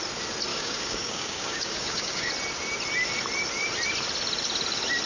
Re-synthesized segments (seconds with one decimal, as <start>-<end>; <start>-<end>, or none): 0.5-2.3